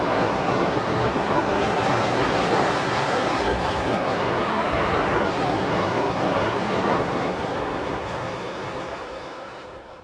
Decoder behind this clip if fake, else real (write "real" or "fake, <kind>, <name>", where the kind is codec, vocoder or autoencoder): fake, codec, SNAC